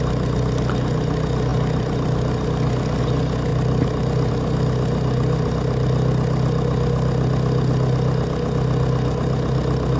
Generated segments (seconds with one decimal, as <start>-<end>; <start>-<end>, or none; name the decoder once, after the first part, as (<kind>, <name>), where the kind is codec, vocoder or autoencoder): none